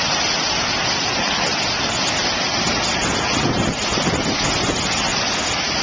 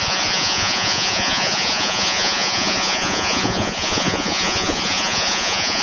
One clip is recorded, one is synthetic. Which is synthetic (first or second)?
second